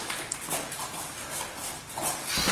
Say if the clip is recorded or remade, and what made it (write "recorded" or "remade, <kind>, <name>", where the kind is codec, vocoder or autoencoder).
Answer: recorded